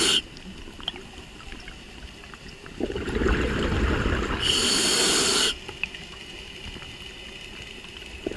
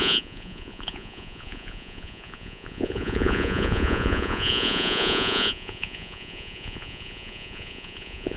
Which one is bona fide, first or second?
first